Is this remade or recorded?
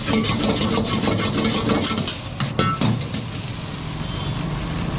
recorded